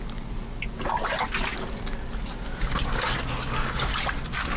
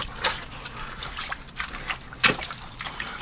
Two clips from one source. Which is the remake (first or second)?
second